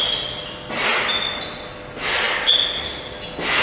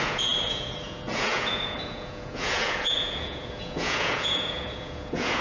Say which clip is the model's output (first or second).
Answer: second